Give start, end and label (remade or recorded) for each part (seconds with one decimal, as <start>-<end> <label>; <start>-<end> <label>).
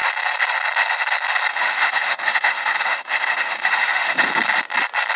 0.0-1.5 recorded; 1.5-4.2 remade; 4.2-5.2 recorded